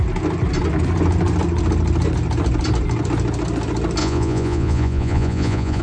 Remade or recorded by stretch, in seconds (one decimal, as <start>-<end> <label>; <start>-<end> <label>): 0.0-4.0 recorded; 4.0-5.8 remade